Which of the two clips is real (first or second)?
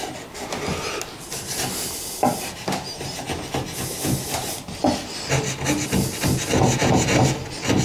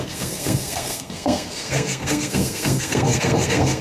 first